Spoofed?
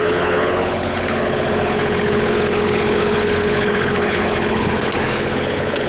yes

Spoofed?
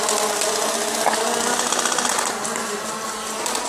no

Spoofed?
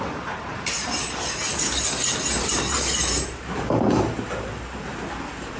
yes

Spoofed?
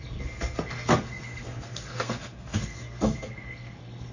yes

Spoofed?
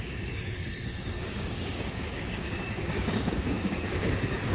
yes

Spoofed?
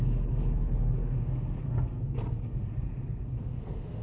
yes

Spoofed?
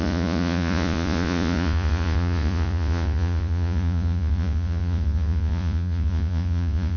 yes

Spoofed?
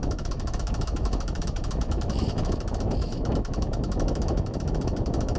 yes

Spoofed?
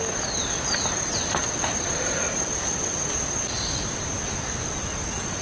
no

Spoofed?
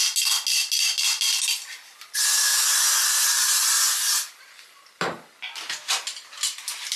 no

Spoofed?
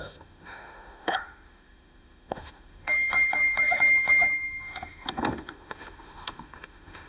yes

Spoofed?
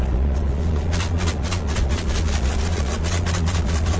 yes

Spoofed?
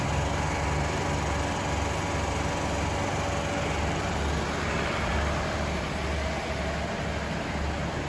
no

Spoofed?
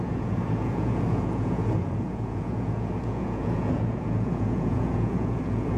yes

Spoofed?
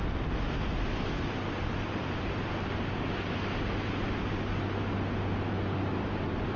no